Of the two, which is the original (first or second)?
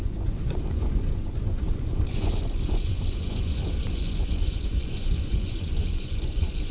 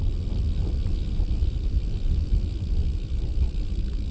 second